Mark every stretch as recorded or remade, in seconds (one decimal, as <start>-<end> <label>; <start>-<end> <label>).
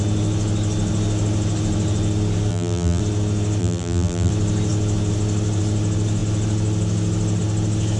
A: 0.0-2.5 recorded; 2.5-3.0 remade; 3.0-3.6 recorded; 3.6-4.3 remade; 4.3-8.0 recorded